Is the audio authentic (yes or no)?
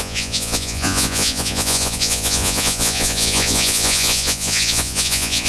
no